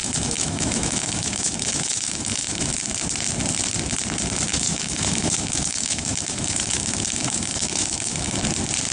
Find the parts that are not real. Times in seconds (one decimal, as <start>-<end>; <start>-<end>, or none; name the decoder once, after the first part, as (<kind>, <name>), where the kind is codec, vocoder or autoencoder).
0.0-2.7 (autoencoder, DAC-VAE); 4.5-8.4